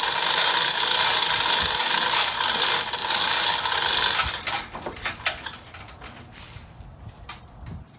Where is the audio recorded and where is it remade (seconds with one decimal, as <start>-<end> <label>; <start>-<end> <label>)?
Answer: 0.0-8.0 recorded